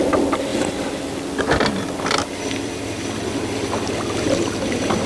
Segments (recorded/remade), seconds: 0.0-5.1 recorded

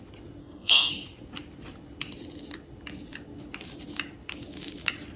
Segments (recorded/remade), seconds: 0.0-0.4 recorded; 0.4-0.9 remade; 0.9-5.2 recorded